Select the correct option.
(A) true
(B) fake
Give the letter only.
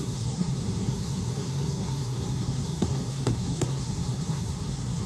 B